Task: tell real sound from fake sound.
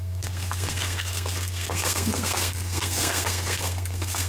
fake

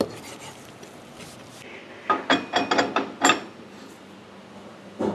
real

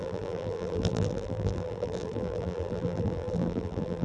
fake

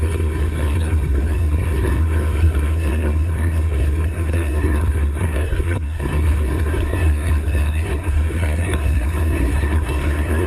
fake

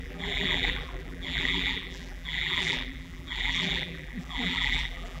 fake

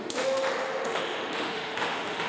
fake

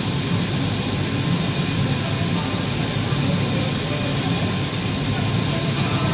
real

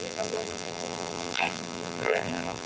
fake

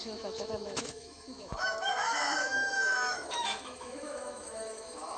fake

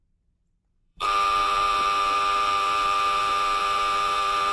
fake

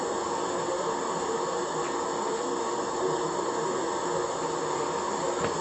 real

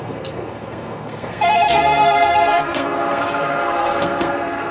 fake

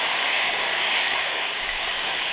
fake